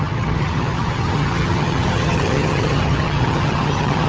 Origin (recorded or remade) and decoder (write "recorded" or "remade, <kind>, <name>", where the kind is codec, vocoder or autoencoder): remade, vocoder, HiFi-GAN